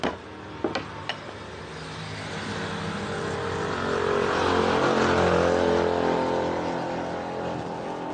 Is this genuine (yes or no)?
yes